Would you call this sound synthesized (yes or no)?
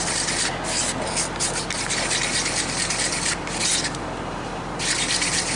no